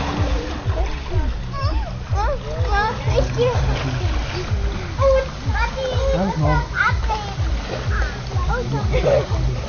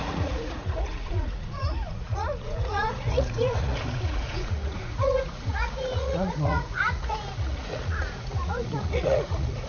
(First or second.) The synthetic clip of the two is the second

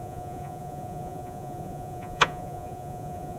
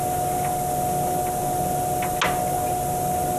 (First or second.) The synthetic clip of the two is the first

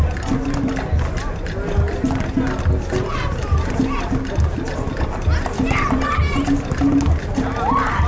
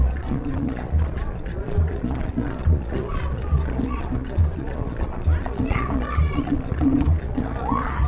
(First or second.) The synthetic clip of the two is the second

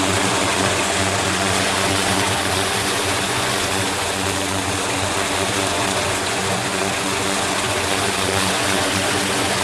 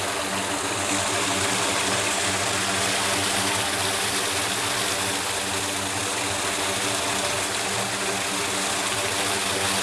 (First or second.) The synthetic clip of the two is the first